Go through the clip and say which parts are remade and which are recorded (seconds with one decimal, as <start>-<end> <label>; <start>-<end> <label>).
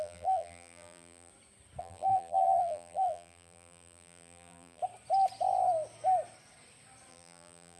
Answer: 0.0-1.3 remade; 1.3-1.8 recorded; 1.8-4.8 remade; 4.8-7.1 recorded; 7.1-7.8 remade